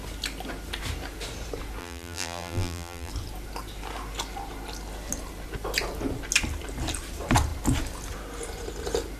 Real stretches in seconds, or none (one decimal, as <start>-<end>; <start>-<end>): 0.0-1.8; 3.1-9.2

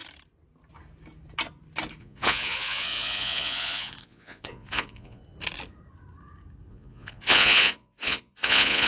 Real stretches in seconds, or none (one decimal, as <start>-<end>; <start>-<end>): 0.0-2.0; 5.2-6.7